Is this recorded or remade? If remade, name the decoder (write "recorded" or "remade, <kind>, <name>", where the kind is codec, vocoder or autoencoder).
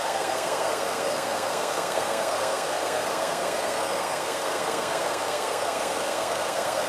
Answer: remade, codec, SNAC